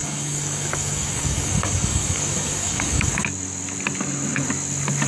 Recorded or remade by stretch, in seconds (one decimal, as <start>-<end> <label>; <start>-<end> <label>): 0.0-3.1 remade; 3.1-5.1 recorded

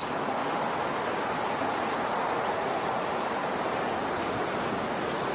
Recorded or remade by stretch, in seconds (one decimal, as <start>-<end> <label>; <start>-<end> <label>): 0.0-0.4 remade; 0.4-1.5 recorded; 1.5-3.4 remade; 3.4-4.0 recorded; 4.0-5.3 remade

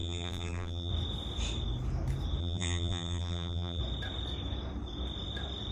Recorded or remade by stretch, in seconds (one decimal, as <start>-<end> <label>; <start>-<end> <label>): 0.0-0.9 remade; 0.9-2.4 recorded; 2.4-3.8 remade; 3.8-5.7 recorded

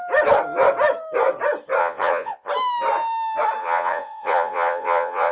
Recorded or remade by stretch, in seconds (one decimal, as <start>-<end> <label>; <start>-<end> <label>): 0.0-1.8 recorded; 1.8-2.5 remade; 2.5-3.6 recorded; 3.6-5.3 remade

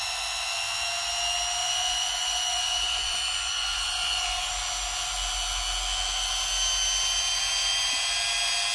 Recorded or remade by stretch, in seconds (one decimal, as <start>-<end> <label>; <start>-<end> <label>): 0.0-1.6 recorded; 1.6-4.5 remade; 4.5-8.7 recorded

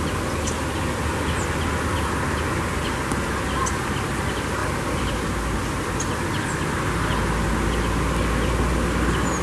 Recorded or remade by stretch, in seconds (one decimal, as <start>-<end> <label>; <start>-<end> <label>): 0.0-9.4 recorded